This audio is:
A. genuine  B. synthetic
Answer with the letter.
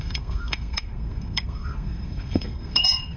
B